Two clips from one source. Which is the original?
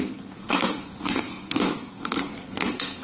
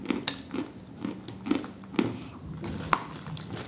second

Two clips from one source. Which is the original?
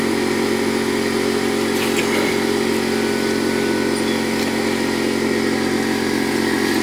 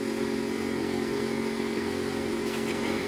first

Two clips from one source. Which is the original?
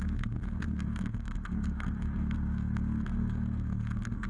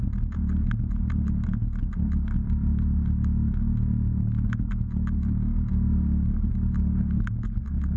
second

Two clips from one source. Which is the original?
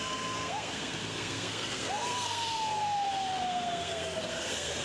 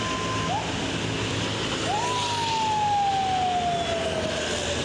second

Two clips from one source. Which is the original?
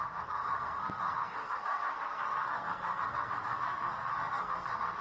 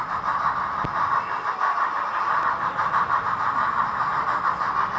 second